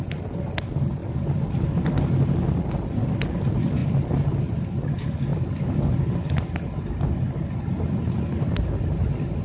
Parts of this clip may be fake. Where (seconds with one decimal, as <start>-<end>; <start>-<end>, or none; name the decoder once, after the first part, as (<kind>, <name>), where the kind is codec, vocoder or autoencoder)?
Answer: none